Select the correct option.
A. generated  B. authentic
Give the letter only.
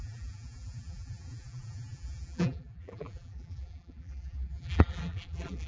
A